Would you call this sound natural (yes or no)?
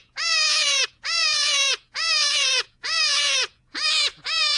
no